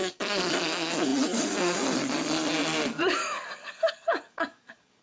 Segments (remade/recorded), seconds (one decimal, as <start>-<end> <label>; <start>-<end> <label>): 0.0-0.5 remade; 0.5-3.2 recorded; 3.2-5.0 remade